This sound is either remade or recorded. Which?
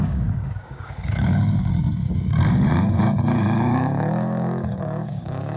remade